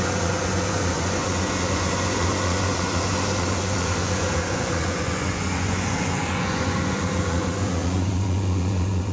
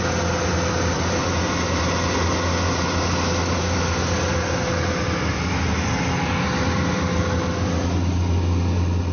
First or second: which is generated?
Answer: first